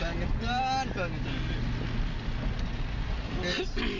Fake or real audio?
real